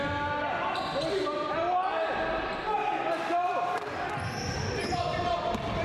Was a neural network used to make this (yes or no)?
no